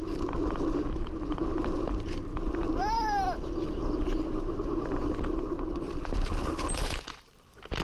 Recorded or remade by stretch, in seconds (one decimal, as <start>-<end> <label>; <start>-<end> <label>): 0.0-7.8 recorded